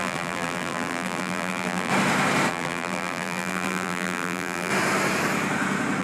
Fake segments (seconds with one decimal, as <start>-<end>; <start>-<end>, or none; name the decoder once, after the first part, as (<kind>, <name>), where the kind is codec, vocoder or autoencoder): 0.0-1.9 (vocoder, BigVGAN v2); 2.5-4.7